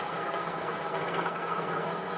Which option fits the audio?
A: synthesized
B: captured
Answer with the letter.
A